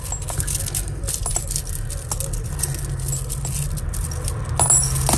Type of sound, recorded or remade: recorded